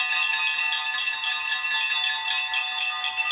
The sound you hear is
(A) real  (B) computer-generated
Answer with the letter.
A